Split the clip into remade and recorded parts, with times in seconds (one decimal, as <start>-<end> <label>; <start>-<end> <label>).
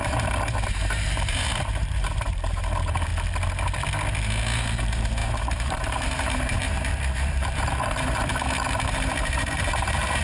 0.0-3.1 remade; 3.1-4.8 recorded; 4.8-8.3 remade; 8.3-8.9 recorded; 8.9-10.2 remade